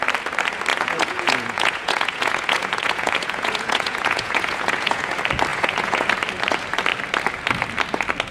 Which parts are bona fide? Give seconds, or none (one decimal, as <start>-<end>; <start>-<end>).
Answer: 0.0-0.7; 5.1-5.5; 6.1-8.3